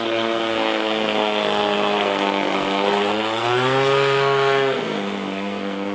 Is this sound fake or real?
fake